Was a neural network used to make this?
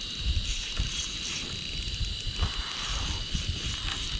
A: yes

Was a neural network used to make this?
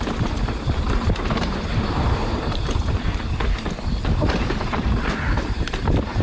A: yes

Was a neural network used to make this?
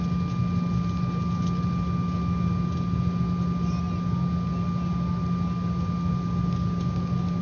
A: no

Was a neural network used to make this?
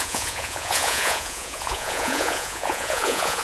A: yes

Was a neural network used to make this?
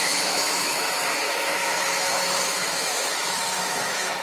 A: yes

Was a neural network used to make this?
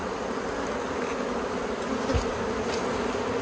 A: no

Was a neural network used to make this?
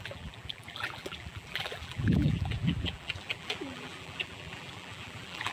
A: yes